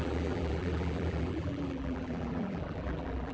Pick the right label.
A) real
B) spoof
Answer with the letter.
B